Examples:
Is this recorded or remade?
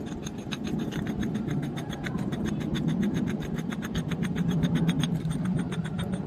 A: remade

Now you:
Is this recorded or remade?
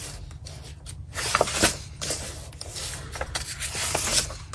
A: recorded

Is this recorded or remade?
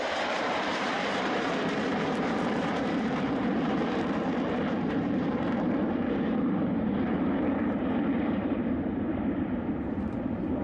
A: remade